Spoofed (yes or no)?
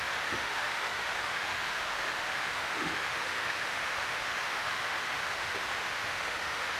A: yes